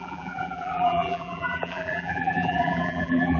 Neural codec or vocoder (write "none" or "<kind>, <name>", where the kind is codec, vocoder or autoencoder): vocoder, BigVGAN v2